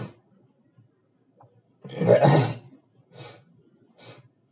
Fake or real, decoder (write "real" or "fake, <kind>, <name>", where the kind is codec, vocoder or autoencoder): real